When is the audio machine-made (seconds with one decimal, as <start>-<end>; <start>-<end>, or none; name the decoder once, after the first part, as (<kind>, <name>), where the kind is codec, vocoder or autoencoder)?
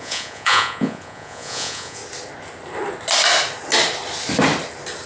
0.0-2.0 (vocoder, Vocos)